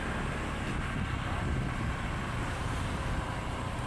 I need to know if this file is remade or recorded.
recorded